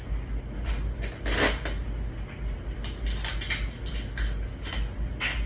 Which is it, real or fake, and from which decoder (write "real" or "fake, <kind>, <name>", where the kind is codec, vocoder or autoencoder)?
real